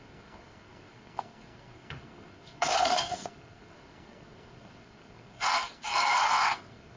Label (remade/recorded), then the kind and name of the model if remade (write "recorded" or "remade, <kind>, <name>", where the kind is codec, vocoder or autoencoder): remade, codec, SNAC